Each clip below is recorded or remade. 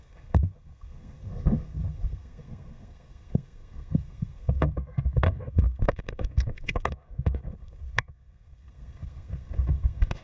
remade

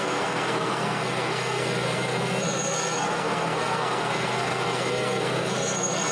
remade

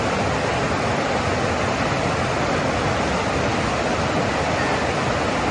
recorded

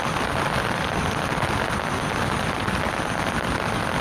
recorded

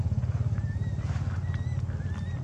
recorded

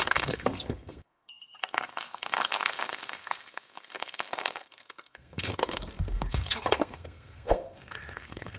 remade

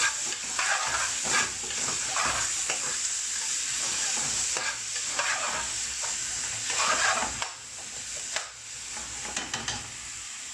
recorded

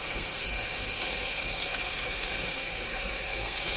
remade